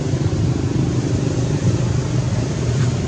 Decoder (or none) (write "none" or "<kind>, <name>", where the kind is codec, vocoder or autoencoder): none